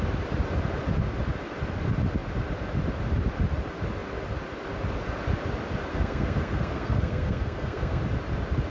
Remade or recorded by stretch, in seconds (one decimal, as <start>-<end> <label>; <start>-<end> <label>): 0.0-5.9 recorded; 5.9-8.0 remade; 8.0-8.7 recorded